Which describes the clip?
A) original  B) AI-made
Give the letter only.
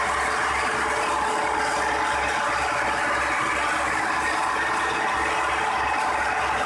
A